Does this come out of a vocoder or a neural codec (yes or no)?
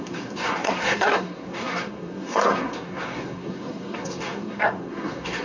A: yes